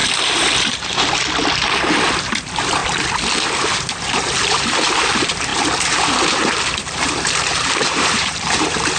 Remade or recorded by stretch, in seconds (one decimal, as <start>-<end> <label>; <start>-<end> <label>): 0.0-2.2 recorded; 2.2-2.8 remade; 2.8-3.5 recorded; 3.5-9.0 remade